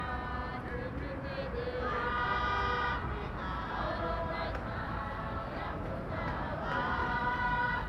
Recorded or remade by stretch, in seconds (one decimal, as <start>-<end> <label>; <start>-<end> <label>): 0.0-4.8 recorded; 4.8-5.9 remade; 5.9-7.0 recorded; 7.0-7.9 remade